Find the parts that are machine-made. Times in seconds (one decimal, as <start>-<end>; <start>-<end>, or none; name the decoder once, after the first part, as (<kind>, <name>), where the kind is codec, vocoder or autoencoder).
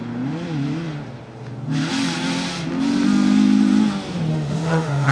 4.3-5.1 (autoencoder, DAC-VAE)